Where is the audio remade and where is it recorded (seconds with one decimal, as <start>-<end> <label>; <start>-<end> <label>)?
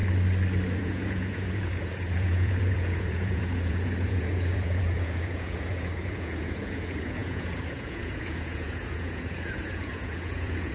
0.0-0.8 recorded; 0.8-10.7 remade